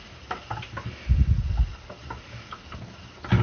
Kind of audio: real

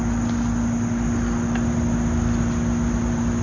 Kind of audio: real